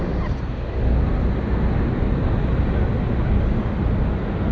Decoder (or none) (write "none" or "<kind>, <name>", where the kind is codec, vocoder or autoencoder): none